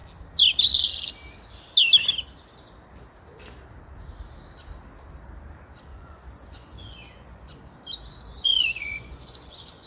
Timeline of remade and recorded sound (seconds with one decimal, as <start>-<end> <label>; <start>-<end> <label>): 0.0-5.9 recorded; 5.9-7.6 remade; 7.6-8.3 recorded; 8.3-9.9 remade